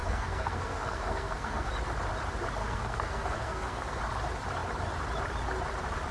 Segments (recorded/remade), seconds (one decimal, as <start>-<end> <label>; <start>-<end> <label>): 0.0-1.7 remade; 1.7-2.6 recorded; 2.6-4.0 remade; 4.0-6.1 recorded